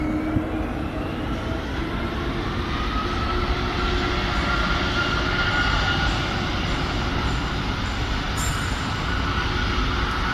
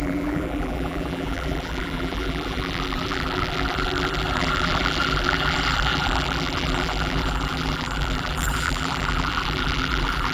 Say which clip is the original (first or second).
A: first